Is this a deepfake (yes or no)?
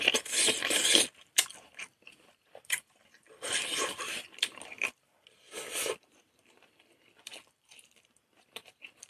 yes